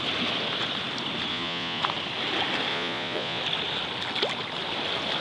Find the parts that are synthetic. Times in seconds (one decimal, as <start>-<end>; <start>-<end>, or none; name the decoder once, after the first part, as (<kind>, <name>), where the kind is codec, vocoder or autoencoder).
1.3-1.8 (vocoder, Vocos); 2.7-3.4